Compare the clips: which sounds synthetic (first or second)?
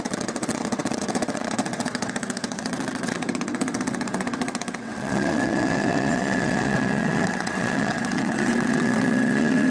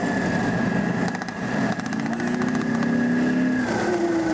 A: first